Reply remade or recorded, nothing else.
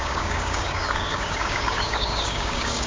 remade